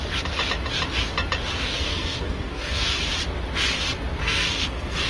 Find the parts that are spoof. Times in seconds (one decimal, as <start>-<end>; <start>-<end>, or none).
1.7-3.0; 4.2-5.1